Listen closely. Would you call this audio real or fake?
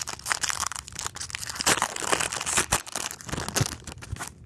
real